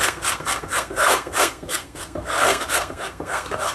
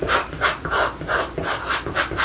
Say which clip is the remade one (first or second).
first